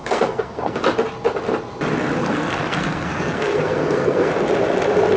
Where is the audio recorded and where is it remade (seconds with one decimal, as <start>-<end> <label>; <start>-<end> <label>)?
0.0-0.8 remade; 0.8-2.2 recorded; 2.2-4.3 remade; 4.3-5.2 recorded